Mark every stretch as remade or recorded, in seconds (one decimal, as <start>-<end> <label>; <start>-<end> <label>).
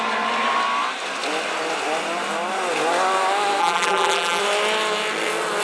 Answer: 0.0-3.6 recorded; 3.6-4.4 remade; 4.4-5.6 recorded